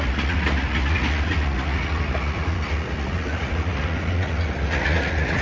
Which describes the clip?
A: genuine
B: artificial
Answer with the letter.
B